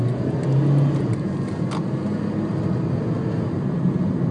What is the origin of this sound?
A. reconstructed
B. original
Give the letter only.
B